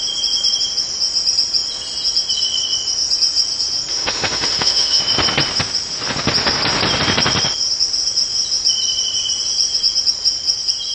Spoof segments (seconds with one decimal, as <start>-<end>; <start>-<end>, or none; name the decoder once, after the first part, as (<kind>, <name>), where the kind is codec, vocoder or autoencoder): 3.9-5.0 (autoencoder, DAC-VAE)